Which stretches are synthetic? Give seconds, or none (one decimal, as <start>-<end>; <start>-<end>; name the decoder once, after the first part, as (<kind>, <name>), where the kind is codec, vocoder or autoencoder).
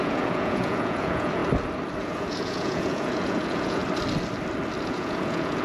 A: 0.0-1.4 (vocoder, Vocos); 2.0-3.8; 4.8-5.6